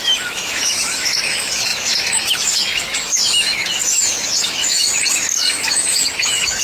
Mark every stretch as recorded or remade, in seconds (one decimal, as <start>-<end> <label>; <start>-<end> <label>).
0.0-6.6 remade